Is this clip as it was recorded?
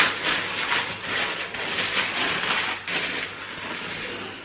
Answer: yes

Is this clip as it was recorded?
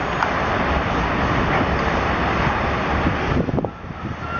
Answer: yes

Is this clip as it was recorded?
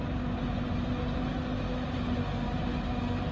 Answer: yes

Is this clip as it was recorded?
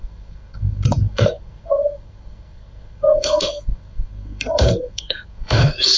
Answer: no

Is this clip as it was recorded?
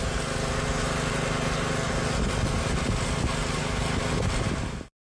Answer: yes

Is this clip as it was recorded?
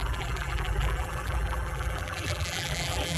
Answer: no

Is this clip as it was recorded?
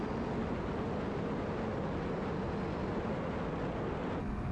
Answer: yes